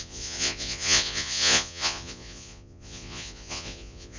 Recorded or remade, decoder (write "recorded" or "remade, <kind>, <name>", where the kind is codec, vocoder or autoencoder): remade, vocoder, Vocos